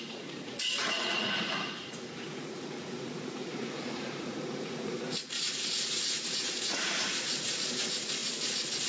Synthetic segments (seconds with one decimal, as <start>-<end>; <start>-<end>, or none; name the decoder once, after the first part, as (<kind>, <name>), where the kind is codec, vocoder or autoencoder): 0.0-8.9 (vocoder, Vocos)